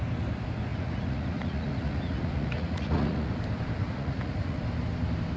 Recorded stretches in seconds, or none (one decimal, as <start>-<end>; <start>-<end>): 0.0-0.7; 3.3-3.8; 4.6-5.4